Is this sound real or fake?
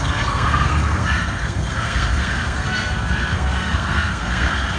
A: fake